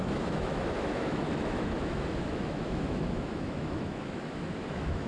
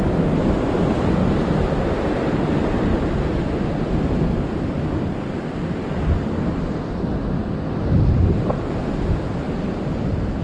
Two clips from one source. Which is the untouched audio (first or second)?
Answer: second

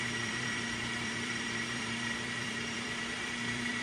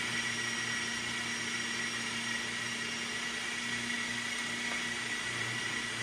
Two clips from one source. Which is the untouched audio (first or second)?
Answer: second